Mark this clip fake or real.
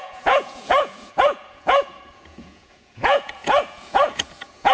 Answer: fake